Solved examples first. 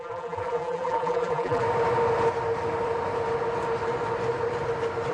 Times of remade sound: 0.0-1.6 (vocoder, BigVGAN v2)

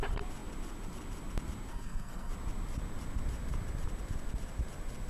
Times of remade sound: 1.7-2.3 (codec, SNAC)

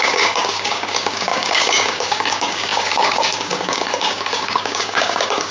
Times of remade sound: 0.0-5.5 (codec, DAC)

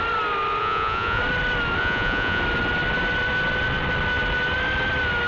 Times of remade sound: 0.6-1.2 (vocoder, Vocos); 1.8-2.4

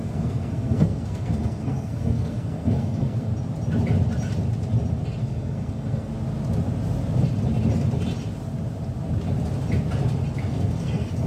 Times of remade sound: 0.0-3.3 (codec, SNAC); 5.2-6.1; 10.4-11.3